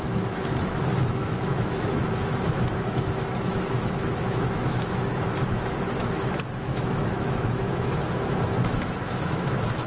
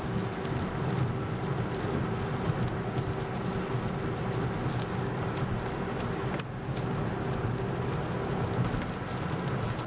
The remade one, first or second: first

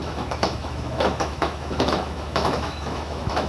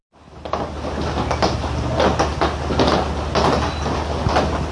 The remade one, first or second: first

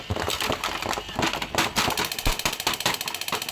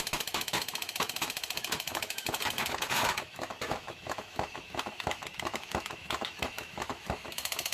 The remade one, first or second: second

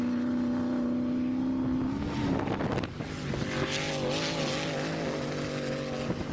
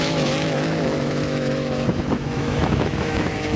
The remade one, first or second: second